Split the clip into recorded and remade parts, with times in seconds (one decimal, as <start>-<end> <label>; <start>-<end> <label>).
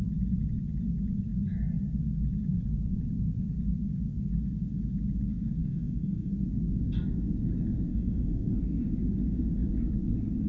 0.0-5.6 recorded; 5.6-6.3 remade; 6.3-7.9 recorded; 7.9-8.6 remade; 8.6-10.5 recorded